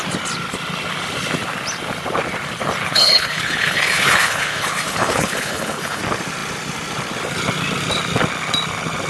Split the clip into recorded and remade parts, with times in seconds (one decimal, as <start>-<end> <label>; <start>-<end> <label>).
0.0-2.9 recorded; 2.9-6.0 remade; 6.0-9.1 recorded